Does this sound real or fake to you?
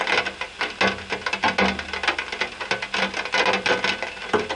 real